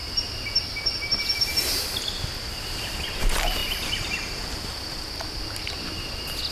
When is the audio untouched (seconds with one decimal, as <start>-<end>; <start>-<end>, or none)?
0.0-3.6; 4.4-6.5